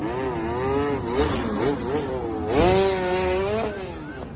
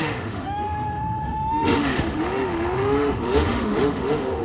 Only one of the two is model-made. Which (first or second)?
second